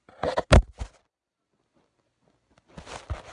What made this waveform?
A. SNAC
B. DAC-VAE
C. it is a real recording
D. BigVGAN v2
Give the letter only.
C